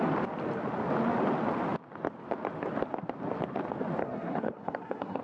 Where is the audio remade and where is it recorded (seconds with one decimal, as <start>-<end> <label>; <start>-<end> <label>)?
0.0-4.0 recorded; 4.0-5.2 remade

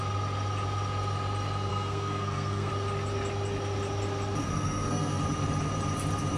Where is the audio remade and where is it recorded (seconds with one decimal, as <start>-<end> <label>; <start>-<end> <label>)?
0.0-1.7 recorded; 1.7-2.7 remade; 2.7-4.4 recorded; 4.4-5.2 remade; 5.2-6.4 recorded

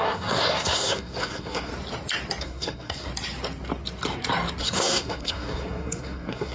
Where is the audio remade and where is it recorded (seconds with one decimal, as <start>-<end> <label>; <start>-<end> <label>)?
0.0-1.7 remade; 1.7-2.4 recorded; 2.4-3.1 remade; 3.1-4.6 recorded; 4.6-6.5 remade

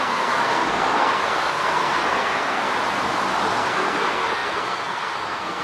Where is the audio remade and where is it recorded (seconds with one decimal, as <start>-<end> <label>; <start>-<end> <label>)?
0.0-2.7 remade; 2.7-3.5 recorded; 3.5-5.6 remade